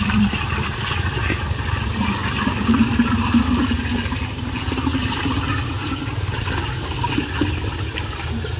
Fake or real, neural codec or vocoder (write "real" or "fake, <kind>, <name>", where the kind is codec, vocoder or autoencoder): real